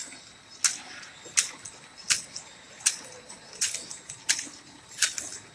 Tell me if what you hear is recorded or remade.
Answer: recorded